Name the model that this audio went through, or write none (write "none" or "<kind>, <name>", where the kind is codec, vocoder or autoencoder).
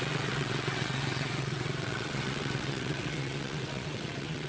vocoder, WaveNeXt